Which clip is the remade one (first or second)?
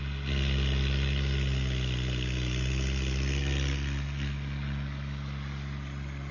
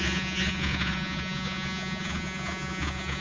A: second